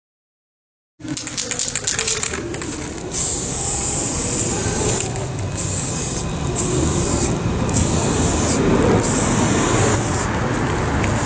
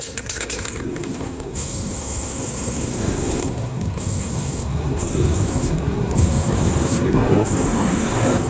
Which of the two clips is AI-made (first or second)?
second